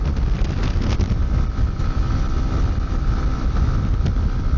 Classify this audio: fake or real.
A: real